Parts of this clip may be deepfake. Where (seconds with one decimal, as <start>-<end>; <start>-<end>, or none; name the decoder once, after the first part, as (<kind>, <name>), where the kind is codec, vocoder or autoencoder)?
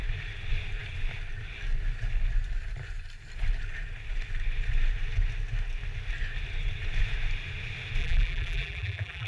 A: 8.0-9.3 (vocoder, BigVGAN v2)